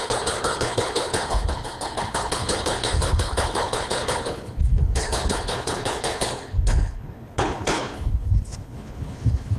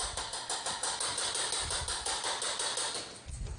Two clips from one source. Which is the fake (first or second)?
first